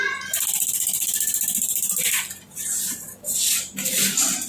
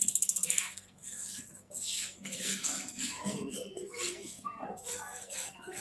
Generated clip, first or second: second